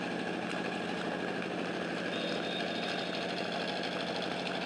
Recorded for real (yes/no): yes